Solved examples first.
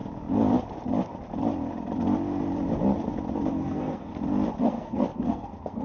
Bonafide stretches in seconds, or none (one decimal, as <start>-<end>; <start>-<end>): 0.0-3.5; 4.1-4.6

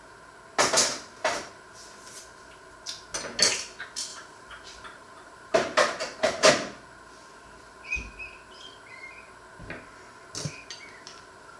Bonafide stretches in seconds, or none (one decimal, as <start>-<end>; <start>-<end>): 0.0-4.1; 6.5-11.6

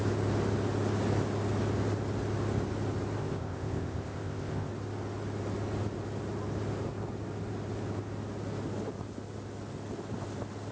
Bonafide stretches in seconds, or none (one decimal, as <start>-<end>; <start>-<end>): 0.0-3.2; 4.7-10.7